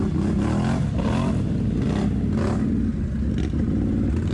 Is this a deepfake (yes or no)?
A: no